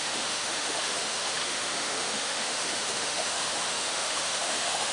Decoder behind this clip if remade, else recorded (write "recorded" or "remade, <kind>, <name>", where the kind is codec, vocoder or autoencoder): remade, autoencoder, DAC-VAE